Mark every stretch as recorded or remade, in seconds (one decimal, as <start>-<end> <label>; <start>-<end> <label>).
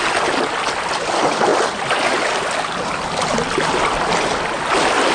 0.0-5.1 recorded